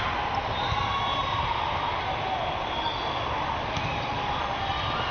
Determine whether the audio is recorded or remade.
recorded